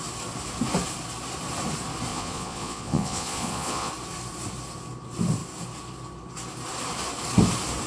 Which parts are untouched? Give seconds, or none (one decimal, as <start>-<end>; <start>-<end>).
0.0-2.1; 3.9-7.9

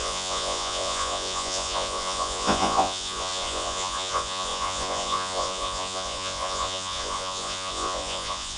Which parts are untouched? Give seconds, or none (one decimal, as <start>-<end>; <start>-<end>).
none